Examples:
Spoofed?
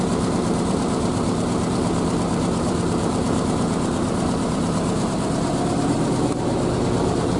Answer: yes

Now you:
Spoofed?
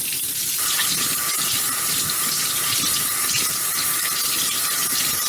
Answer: no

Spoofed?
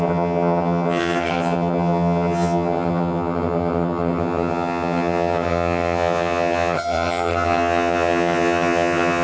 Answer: yes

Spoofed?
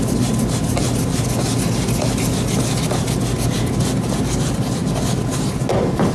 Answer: no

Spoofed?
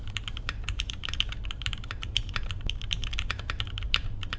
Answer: yes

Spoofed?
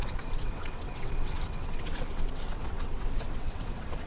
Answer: yes